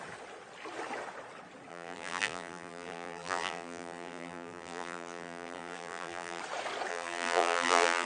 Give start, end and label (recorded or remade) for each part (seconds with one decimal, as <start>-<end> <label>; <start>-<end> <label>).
0.0-1.7 recorded; 1.7-6.4 remade; 6.4-6.9 recorded; 6.9-8.1 remade